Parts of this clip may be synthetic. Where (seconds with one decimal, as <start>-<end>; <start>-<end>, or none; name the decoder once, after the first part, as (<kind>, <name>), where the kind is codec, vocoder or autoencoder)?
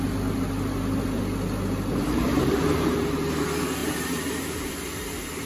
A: 1.9-3.1 (vocoder, BigVGAN v2); 3.8-4.7